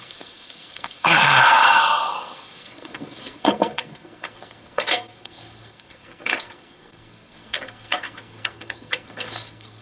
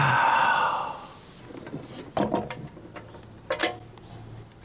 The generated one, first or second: first